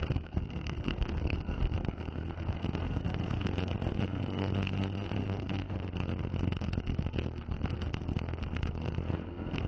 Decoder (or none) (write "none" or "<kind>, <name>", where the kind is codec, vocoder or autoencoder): codec, SNAC